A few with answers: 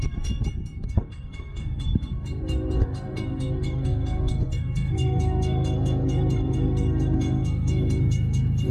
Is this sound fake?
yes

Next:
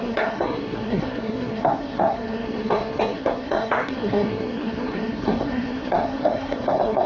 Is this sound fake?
yes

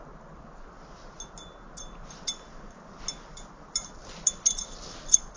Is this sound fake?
no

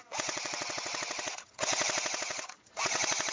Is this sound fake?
yes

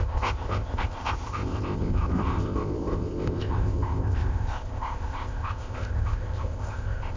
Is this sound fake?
yes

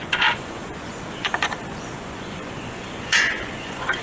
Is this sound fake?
yes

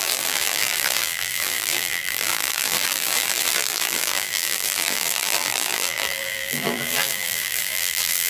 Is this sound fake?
yes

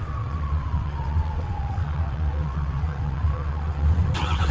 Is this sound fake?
yes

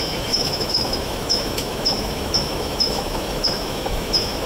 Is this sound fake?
yes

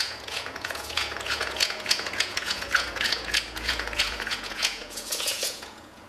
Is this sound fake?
yes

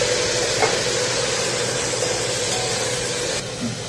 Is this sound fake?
no